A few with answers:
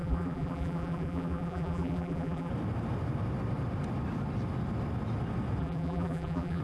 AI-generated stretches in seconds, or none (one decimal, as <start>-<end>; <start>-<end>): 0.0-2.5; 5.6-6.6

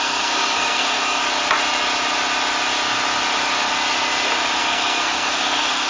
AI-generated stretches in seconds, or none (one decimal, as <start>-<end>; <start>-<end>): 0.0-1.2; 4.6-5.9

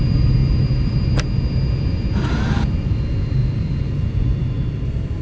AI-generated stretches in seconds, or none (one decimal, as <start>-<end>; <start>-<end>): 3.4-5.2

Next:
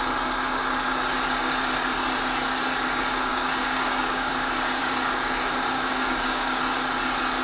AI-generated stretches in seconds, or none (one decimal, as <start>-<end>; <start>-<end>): 3.3-4.3; 4.8-6.6